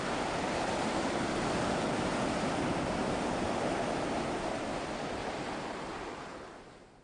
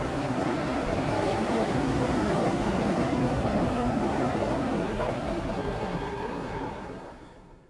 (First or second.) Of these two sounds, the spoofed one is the second